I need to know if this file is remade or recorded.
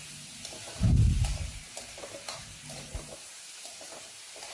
remade